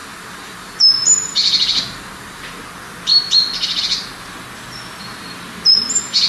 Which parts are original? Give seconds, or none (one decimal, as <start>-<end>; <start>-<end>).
2.6-6.3